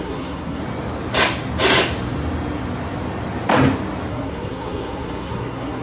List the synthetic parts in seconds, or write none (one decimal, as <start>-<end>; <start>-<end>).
0.0-0.6; 4.1-5.8